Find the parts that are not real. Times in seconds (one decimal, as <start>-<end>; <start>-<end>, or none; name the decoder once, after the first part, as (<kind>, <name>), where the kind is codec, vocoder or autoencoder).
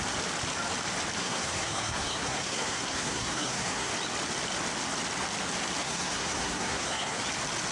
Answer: 1.2-3.9 (codec, SNAC); 5.8-7.2